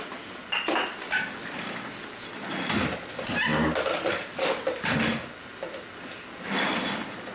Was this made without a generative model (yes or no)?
yes